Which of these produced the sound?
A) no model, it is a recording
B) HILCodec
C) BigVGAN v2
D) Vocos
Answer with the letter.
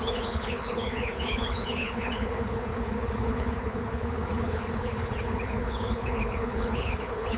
B